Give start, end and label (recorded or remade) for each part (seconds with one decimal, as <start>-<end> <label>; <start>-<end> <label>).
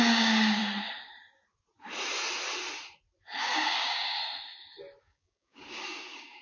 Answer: 0.0-0.6 remade; 0.6-3.4 recorded; 3.4-4.2 remade; 4.2-5.0 recorded; 5.0-6.4 remade